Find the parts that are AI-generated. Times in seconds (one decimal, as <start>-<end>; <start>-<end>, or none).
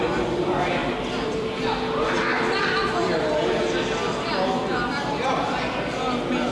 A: 0.8-1.5; 2.3-2.9